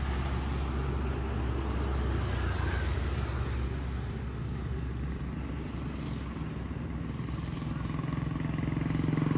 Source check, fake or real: real